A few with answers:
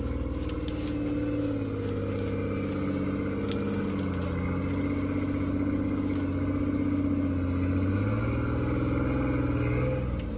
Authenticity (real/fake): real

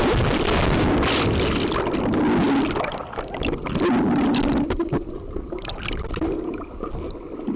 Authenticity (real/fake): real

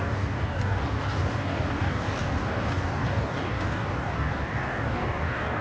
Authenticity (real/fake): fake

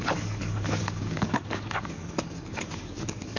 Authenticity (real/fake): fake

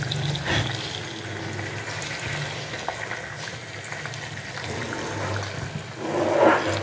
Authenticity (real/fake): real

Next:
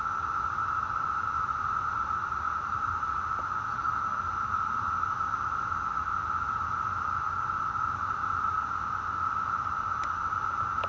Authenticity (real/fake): real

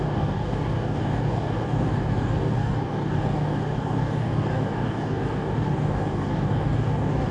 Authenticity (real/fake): fake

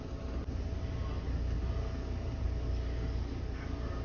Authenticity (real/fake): real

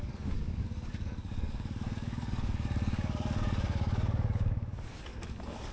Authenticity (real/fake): fake